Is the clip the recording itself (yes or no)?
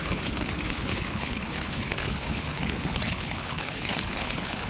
no